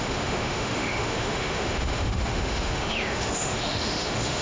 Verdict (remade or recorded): remade